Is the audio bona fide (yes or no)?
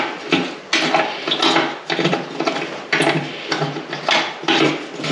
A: yes